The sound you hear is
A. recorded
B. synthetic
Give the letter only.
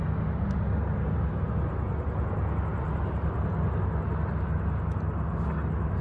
A